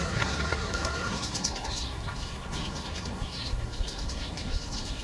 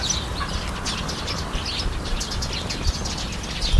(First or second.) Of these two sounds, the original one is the second